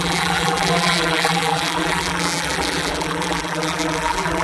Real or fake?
fake